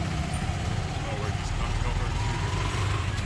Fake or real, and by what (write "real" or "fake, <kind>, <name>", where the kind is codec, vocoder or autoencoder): real